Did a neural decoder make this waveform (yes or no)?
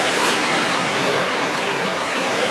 yes